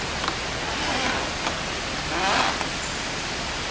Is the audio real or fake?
real